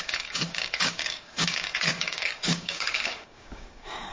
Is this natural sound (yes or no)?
no